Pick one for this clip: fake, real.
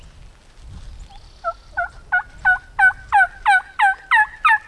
real